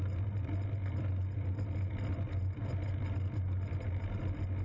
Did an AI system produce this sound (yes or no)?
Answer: no